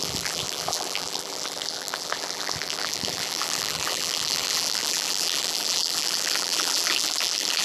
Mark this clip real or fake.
fake